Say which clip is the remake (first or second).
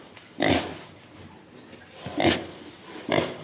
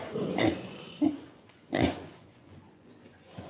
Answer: second